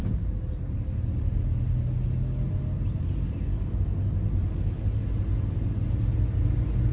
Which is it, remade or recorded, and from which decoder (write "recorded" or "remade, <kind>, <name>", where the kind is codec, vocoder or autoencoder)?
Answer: recorded